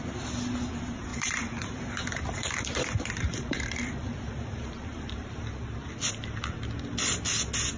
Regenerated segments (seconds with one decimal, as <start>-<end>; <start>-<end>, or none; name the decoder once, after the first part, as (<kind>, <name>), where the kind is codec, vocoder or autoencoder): 1.1-5.6 (vocoder, BigVGAN v2)

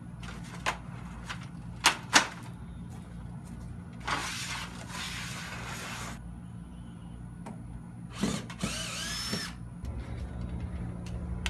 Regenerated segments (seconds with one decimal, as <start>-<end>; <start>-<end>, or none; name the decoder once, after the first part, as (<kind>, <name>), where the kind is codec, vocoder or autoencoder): none